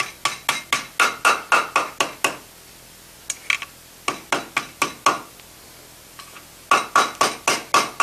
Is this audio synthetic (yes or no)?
no